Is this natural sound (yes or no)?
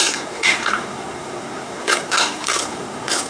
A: no